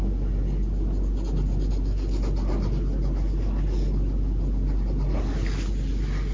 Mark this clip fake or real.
real